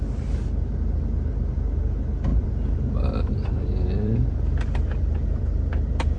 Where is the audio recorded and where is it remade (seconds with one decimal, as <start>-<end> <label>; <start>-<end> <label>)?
0.0-2.3 recorded; 2.3-6.2 remade